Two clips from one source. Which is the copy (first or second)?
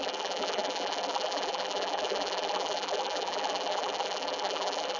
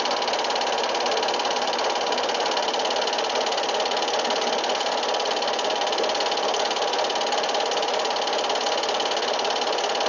first